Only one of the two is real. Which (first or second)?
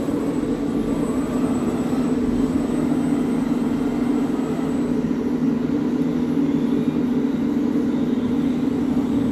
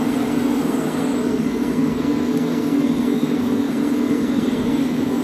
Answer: first